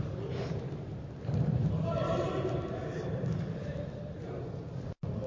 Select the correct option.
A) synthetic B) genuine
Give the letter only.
B